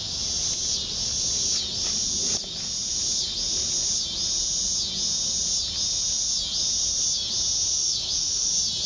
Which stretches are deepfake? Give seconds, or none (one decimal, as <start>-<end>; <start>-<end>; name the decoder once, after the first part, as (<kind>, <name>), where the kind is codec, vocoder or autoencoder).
7.8-8.5 (autoencoder, DAC-VAE)